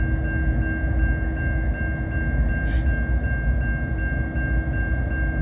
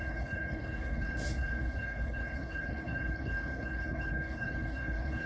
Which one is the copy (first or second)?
second